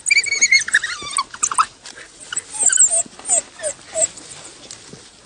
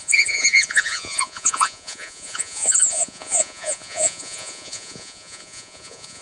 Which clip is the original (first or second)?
first